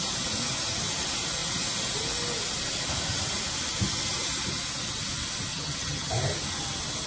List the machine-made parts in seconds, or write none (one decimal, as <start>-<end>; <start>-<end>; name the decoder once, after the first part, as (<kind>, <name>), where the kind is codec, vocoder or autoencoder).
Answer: 5.5-6.1 (vocoder, HiFi-GAN)